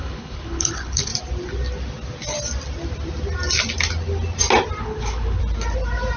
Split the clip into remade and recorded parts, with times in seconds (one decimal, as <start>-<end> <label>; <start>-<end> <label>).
0.0-1.1 remade; 1.1-4.8 recorded; 4.8-5.4 remade; 5.4-6.2 recorded